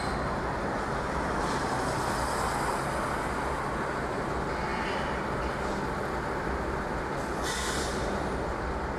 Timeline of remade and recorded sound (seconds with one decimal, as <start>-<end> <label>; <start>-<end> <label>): 0.0-9.0 recorded